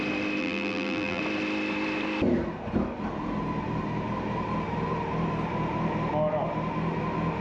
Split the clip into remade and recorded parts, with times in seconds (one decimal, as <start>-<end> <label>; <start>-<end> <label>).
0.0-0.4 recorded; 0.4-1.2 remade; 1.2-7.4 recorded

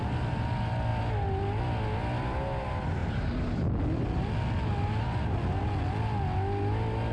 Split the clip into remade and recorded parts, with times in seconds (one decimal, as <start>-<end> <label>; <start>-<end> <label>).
0.0-7.1 recorded

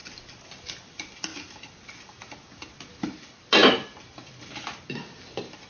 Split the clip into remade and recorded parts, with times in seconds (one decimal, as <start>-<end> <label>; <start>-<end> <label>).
0.0-0.6 recorded; 0.6-1.3 remade; 1.3-2.8 recorded; 2.8-5.7 remade

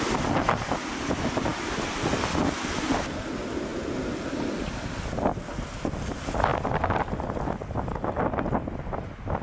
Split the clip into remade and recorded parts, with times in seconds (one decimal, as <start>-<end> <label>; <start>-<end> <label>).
0.0-9.4 recorded

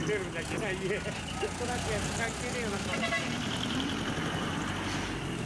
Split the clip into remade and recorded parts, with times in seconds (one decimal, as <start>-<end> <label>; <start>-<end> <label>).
0.0-2.9 recorded; 2.9-4.5 remade; 4.5-5.5 recorded

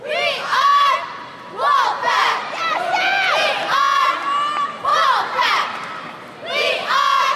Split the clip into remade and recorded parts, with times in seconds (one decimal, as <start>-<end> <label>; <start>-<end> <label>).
0.0-2.2 recorded; 2.2-2.9 remade; 2.9-4.9 recorded; 4.9-6.1 remade; 6.1-7.4 recorded

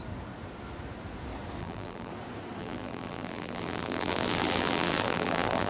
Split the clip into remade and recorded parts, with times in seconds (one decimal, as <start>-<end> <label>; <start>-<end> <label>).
0.0-1.6 recorded; 1.6-2.1 remade; 2.1-2.6 recorded; 2.6-5.7 remade

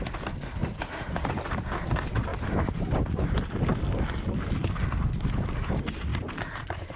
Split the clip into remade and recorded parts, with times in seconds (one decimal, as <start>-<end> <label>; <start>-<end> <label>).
0.0-0.6 recorded; 0.6-1.1 remade; 1.1-2.3 recorded; 2.3-3.3 remade; 3.3-6.1 recorded; 6.1-7.0 remade